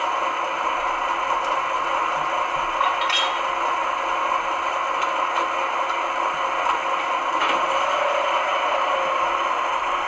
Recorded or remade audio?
recorded